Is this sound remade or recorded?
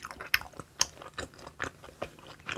recorded